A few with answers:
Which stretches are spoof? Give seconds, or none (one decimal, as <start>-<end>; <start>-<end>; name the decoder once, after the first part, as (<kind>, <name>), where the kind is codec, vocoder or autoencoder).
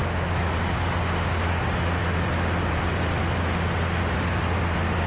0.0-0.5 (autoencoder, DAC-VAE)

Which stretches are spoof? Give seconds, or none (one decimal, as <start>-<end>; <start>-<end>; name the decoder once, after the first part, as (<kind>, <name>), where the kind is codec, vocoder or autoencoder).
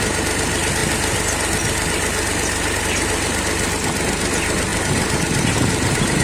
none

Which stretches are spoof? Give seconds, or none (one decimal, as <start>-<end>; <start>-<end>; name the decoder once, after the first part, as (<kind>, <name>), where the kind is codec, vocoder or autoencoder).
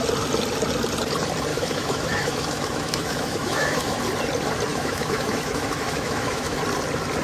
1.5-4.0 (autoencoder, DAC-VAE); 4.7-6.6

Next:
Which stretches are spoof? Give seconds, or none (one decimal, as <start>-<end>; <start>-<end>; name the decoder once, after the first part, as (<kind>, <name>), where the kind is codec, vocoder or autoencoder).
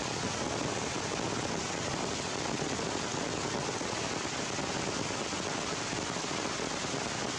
none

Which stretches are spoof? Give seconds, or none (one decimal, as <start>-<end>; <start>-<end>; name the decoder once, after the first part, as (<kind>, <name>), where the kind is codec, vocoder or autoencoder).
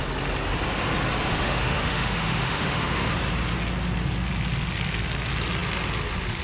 1.3-3.1 (autoencoder, DAC-VAE)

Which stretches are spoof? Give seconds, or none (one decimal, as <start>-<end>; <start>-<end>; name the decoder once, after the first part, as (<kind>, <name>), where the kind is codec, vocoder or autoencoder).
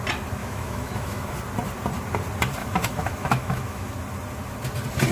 0.4-1.3 (autoencoder, DAC-VAE); 2.6-3.9